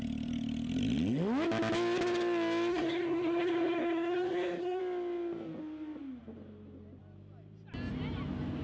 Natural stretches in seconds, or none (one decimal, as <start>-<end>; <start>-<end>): 0.0-2.7; 4.8-8.6